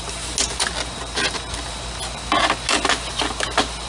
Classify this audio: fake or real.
real